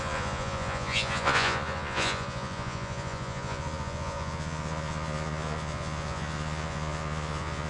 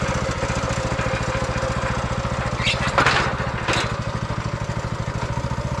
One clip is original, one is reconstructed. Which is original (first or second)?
second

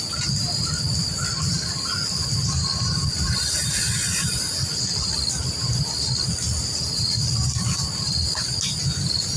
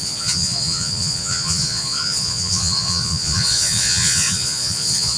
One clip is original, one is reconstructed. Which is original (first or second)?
first